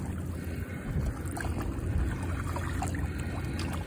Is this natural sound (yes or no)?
yes